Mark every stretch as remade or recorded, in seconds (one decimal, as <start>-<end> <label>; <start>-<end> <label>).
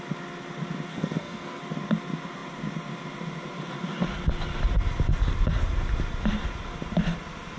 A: 0.0-0.9 recorded; 0.9-1.6 remade; 1.6-7.6 recorded